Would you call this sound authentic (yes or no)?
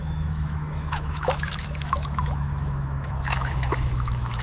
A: no